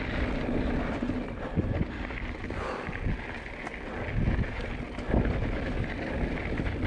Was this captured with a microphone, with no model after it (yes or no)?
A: yes